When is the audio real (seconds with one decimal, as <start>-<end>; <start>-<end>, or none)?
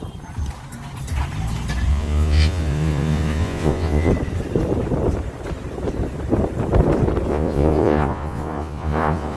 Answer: 0.0-1.9; 4.1-7.3